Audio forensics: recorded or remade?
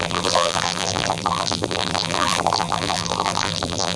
remade